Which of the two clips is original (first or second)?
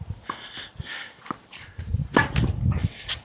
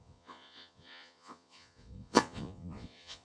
first